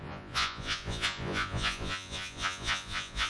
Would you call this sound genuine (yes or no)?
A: no